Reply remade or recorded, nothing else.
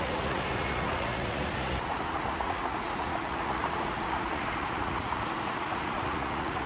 remade